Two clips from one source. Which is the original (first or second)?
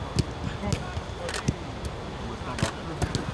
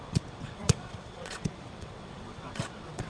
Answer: first